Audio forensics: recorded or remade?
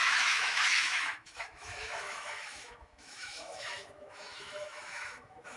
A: remade